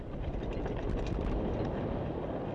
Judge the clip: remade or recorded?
recorded